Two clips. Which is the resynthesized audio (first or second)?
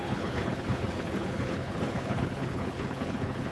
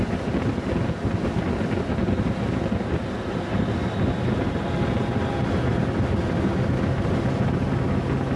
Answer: first